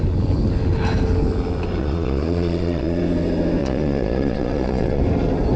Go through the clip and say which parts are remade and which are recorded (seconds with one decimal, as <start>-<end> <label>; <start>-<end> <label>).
0.0-1.8 recorded; 1.8-3.0 remade; 3.0-3.6 recorded; 3.6-5.0 remade; 5.0-5.6 recorded